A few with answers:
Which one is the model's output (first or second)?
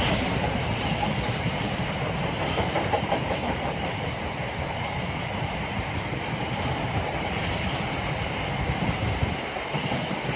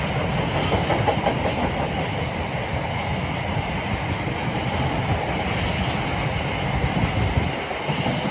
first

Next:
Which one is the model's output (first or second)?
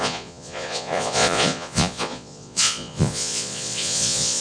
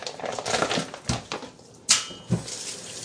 first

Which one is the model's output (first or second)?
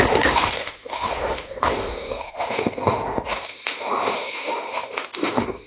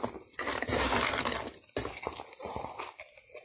first